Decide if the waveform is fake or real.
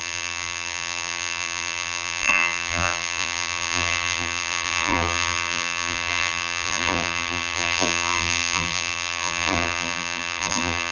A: fake